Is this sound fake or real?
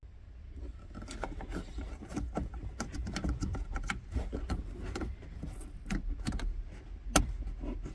real